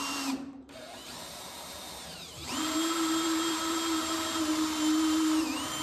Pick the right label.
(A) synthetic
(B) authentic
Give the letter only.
A